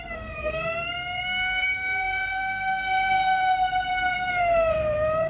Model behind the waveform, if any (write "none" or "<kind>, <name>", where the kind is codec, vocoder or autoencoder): codec, SNAC